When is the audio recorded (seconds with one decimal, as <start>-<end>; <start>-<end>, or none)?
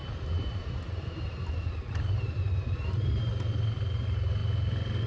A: 3.1-5.1